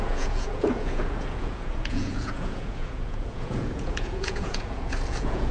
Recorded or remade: remade